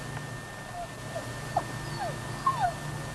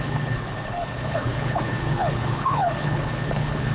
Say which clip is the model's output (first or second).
second